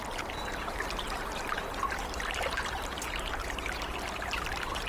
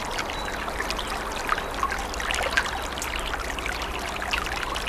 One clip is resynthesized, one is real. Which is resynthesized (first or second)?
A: first